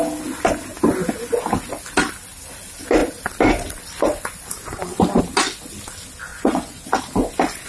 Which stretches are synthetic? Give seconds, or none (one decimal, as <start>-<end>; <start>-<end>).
6.3-6.8